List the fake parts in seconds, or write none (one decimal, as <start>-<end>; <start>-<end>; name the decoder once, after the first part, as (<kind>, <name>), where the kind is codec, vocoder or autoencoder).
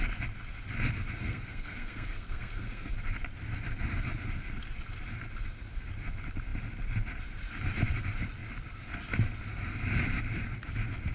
1.2-2.9 (codec, SNAC)